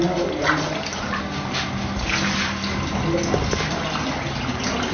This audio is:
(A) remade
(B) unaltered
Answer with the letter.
B